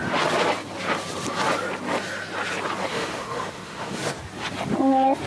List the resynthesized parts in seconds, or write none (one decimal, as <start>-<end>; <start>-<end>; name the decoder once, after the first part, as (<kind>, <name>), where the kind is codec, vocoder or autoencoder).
2.9-4.0 (autoencoder, DAC-VAE)